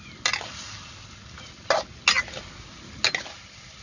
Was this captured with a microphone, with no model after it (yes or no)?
yes